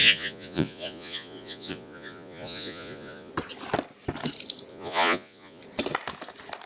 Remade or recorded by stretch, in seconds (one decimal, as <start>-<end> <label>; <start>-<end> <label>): 0.0-3.3 remade; 3.3-4.7 recorded; 4.7-5.6 remade; 5.6-6.7 recorded